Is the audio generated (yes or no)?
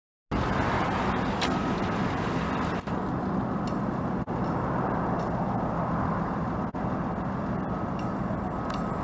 no